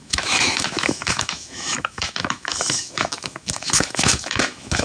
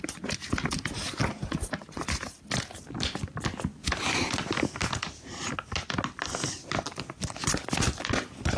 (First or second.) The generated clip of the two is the first